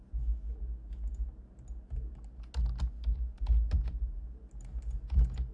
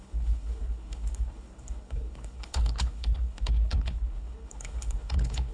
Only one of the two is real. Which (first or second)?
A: first